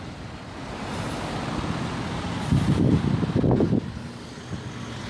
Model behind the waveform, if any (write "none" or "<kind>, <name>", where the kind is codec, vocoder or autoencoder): none